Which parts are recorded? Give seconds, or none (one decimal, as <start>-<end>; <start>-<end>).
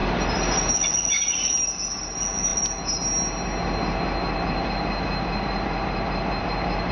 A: 0.0-6.9